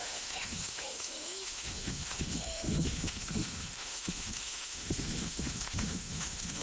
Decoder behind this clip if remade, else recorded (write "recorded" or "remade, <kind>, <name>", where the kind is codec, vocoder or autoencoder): remade, autoencoder, DAC-VAE